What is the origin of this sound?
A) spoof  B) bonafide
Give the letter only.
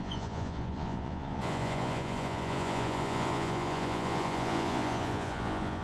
A